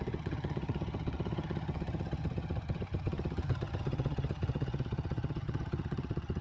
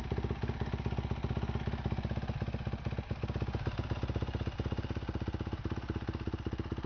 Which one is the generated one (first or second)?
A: first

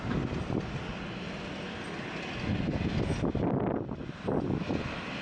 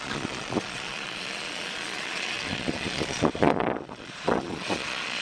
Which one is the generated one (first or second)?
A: second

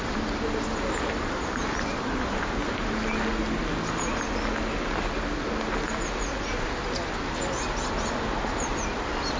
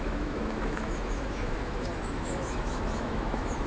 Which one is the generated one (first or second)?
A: second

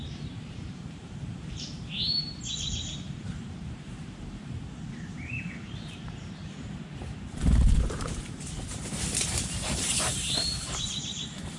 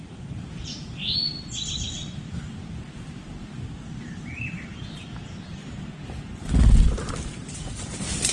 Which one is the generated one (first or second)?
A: first